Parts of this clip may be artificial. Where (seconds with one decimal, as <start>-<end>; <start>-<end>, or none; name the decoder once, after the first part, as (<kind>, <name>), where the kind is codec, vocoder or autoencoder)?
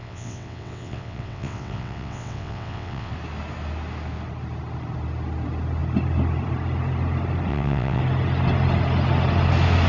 0.0-3.1 (vocoder, WaveNeXt); 7.5-8.0